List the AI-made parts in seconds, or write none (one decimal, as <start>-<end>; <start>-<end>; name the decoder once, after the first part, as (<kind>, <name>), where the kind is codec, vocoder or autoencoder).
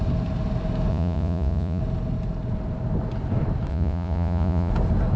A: 0.9-1.8 (vocoder, Vocos); 3.7-4.7